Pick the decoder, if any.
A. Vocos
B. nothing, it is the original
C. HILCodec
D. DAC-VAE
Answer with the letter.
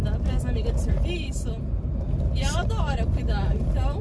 B